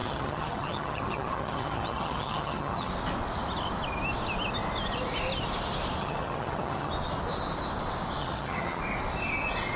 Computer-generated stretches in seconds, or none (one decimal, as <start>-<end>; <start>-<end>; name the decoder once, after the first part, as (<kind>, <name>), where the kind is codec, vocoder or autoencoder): 0.0-2.9 (vocoder, HiFi-GAN); 6.0-6.9; 8.2-8.8